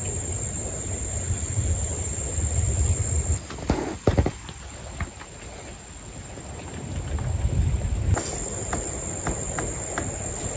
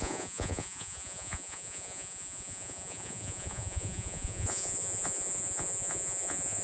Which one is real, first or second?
first